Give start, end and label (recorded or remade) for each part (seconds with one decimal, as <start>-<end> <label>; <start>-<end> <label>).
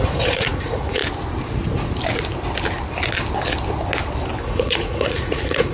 0.0-1.0 remade; 1.0-4.4 recorded; 4.4-5.7 remade